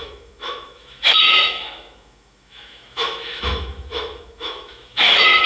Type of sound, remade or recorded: remade